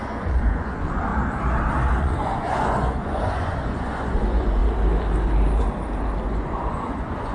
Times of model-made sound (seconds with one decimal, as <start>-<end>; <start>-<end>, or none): 0.0-1.1; 2.0-4.6; 6.2-7.3